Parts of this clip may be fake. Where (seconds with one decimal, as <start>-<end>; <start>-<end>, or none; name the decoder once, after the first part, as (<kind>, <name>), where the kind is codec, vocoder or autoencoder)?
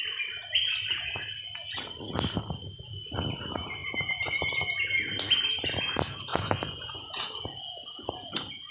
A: 6.3-7.2 (vocoder, Vocos)